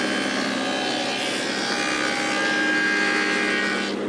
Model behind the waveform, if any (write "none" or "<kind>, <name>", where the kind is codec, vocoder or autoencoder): none